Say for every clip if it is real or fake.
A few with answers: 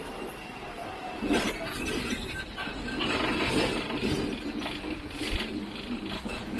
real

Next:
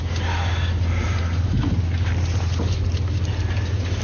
real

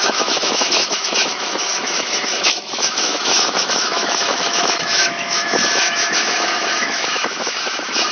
fake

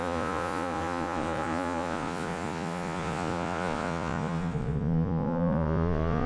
fake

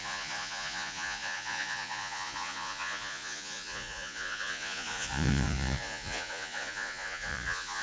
fake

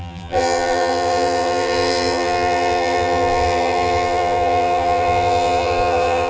fake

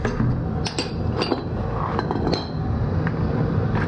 real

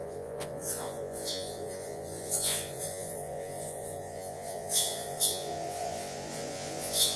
fake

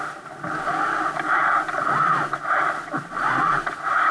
real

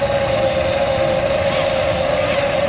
real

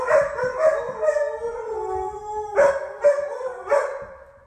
real